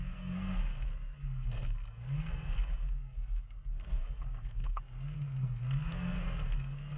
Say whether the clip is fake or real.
fake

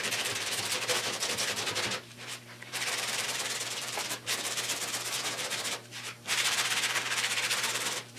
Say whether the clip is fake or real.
fake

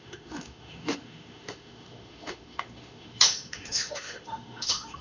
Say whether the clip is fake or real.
fake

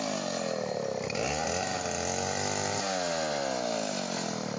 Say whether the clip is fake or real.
real